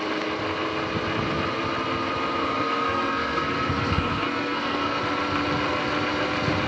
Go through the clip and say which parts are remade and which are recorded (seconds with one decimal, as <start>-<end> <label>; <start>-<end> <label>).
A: 0.0-2.4 recorded; 2.4-5.0 remade; 5.0-6.7 recorded